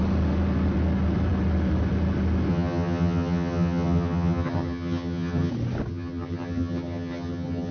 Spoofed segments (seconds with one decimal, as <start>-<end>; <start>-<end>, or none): 2.5-5.5; 5.9-7.7

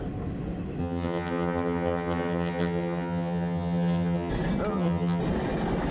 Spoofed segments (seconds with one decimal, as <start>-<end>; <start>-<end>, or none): 0.8-4.3; 4.7-5.2

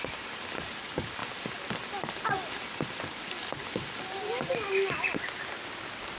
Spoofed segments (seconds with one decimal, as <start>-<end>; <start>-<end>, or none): none